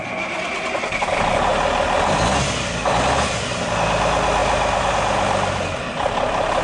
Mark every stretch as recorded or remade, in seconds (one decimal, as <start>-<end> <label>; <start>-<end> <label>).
0.0-6.6 recorded